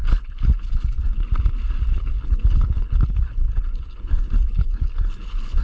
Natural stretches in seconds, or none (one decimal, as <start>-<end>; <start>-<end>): 0.6-1.9